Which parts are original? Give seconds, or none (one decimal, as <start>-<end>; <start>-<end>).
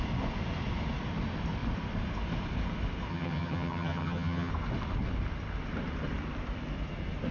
0.0-3.1; 4.5-7.3